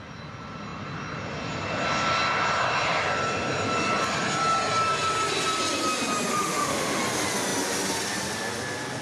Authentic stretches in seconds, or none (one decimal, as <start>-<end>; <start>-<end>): 0.0-6.3; 7.0-9.0